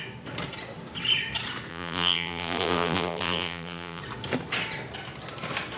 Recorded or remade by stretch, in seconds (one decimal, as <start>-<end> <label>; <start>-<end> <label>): 0.0-1.7 recorded; 1.7-4.0 remade; 4.0-5.8 recorded